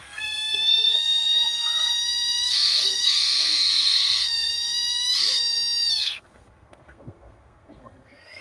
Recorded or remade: remade